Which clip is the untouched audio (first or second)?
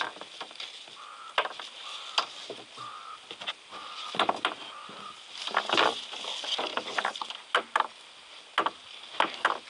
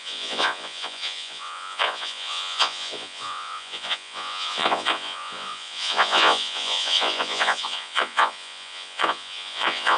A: first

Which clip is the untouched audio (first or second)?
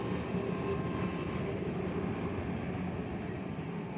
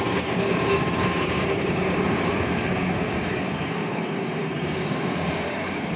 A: first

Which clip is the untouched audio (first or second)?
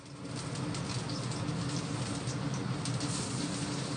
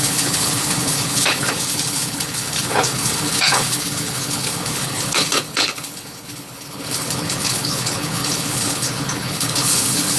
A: first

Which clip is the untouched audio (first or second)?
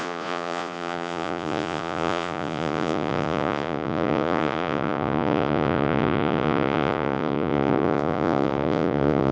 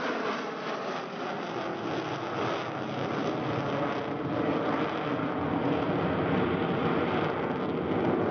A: second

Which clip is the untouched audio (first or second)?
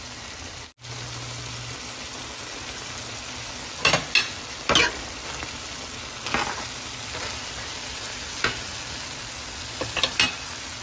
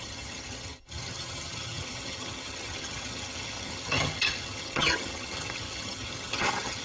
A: first